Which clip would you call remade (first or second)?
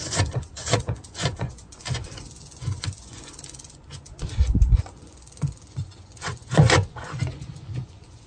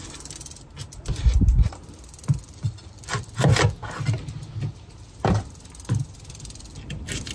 first